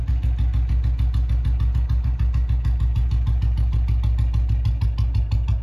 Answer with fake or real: real